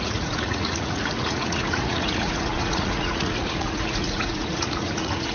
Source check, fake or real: fake